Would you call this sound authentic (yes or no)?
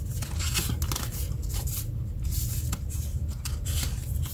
yes